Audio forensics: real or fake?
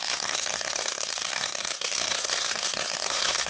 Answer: fake